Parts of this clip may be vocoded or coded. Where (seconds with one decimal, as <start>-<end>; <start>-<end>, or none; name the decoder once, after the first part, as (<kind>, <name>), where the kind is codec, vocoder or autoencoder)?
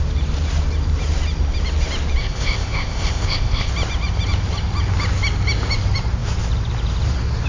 2.2-3.7 (codec, ZipCodec)